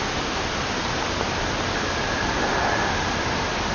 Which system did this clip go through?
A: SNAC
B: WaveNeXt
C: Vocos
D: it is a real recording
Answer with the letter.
D